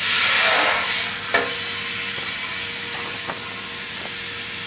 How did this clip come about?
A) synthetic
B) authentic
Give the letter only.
B